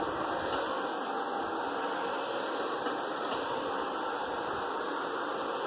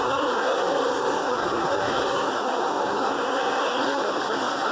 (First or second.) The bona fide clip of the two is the first